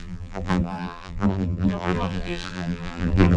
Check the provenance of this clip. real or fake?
fake